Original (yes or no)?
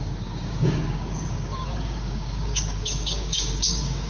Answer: no